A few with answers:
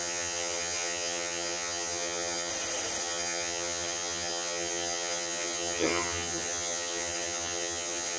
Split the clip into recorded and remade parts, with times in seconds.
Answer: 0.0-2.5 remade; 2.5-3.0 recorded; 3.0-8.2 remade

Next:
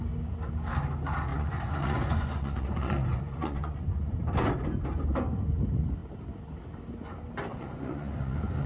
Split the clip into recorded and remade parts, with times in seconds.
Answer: 0.0-1.3 recorded; 1.3-4.2 remade; 4.2-7.5 recorded; 7.5-8.7 remade

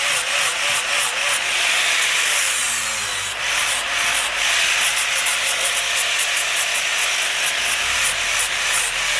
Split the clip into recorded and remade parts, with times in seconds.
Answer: 0.0-9.2 recorded